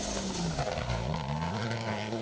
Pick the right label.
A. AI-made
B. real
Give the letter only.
B